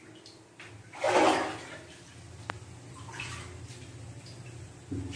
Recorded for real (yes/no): yes